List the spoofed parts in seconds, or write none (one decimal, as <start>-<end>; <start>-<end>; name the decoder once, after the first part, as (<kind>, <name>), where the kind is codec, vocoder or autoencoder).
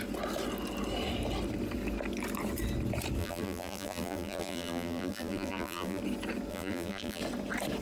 3.2-6.0 (vocoder, BigVGAN v2); 6.5-7.2